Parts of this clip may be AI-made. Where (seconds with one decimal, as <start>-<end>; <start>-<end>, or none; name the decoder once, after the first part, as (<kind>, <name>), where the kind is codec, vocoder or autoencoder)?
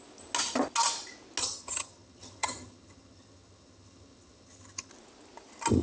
1.4-4.9 (vocoder, HiFi-GAN)